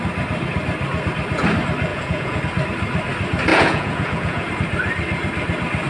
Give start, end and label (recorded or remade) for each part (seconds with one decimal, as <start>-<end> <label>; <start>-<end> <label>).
0.0-1.9 recorded; 1.9-2.4 remade; 2.4-3.5 recorded; 3.5-4.5 remade; 4.5-5.9 recorded